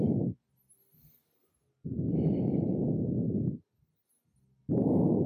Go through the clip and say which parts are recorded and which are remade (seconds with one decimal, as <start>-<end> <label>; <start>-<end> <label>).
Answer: 0.0-5.3 recorded